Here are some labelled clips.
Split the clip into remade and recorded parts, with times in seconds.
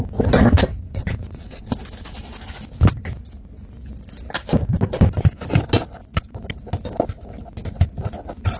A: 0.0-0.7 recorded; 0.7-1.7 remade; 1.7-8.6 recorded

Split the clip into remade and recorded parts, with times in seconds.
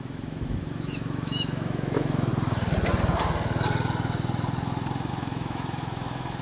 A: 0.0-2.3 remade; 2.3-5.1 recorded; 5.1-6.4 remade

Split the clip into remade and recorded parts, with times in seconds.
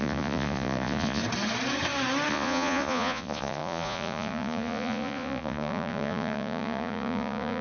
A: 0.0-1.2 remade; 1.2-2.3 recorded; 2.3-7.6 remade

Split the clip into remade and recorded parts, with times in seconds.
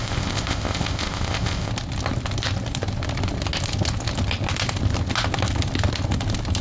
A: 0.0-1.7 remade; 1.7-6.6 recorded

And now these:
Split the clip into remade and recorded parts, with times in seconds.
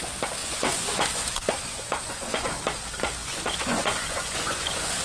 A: 0.0-0.4 recorded; 0.4-2.5 remade; 2.5-3.2 recorded; 3.2-5.0 remade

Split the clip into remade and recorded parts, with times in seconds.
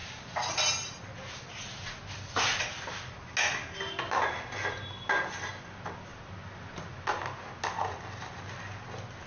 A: 0.0-9.3 recorded